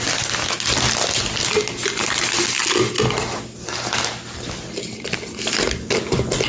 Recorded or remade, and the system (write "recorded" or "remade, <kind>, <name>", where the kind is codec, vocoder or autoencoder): recorded